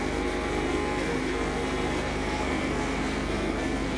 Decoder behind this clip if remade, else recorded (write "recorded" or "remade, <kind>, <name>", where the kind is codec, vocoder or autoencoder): remade, codec, SNAC